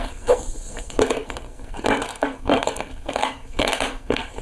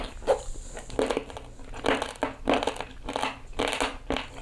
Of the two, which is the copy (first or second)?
first